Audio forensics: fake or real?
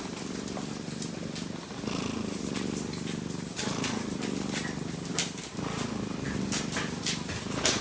real